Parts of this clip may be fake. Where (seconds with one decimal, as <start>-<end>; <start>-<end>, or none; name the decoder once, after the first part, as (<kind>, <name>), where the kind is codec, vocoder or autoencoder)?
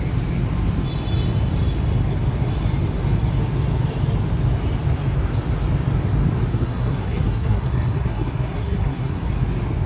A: 6.5-9.3 (codec, SNAC)